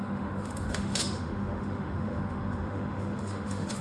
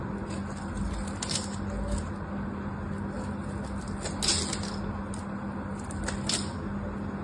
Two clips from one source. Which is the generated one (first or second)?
first